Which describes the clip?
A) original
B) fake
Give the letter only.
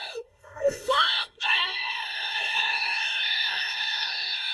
B